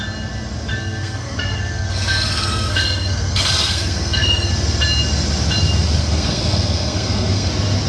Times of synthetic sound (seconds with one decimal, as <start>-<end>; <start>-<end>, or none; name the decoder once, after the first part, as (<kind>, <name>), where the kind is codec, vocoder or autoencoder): 0.7-4.5 (codec, SNAC); 6.0-7.5